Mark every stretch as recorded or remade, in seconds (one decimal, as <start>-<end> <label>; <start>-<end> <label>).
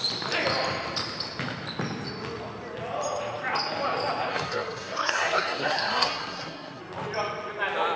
0.0-4.3 recorded; 4.3-6.8 remade; 6.8-8.0 recorded